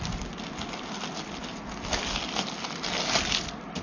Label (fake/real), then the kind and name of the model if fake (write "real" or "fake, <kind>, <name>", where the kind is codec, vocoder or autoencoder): real